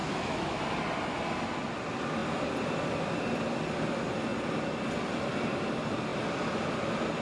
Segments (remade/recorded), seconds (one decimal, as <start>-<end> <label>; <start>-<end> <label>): 0.0-0.6 remade; 0.6-7.2 recorded